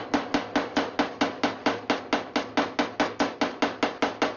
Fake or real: real